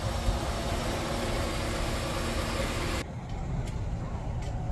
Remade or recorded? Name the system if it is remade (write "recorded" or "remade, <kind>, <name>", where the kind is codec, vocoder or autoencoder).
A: recorded